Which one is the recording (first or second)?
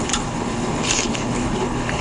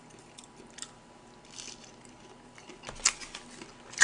second